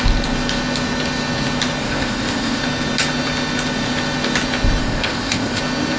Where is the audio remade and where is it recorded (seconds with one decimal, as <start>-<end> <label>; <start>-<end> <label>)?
0.0-1.8 recorded; 1.8-2.6 remade; 2.6-4.8 recorded; 4.8-5.6 remade; 5.6-6.0 recorded